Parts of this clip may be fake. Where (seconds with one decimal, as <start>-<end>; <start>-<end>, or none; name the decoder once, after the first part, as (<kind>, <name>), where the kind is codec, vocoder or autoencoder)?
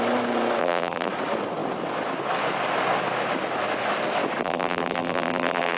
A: 0.6-1.1 (vocoder, BigVGAN v2); 4.4-5.8